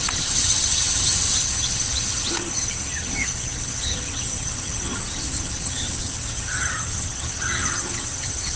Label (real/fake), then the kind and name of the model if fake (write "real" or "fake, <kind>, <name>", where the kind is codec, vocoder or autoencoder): fake, vocoder, HiFi-GAN